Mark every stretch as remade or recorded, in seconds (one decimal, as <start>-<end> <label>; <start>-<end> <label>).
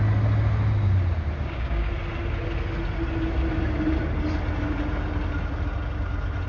0.0-1.4 recorded; 1.4-1.9 remade; 1.9-6.5 recorded